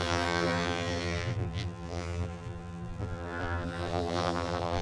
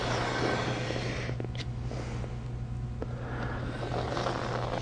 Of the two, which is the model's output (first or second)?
first